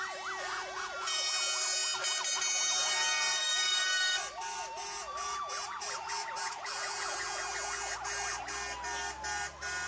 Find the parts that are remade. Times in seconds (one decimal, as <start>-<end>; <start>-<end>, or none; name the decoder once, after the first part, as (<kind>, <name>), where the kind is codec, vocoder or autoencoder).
3.5-7.5 (vocoder, BigVGAN v2)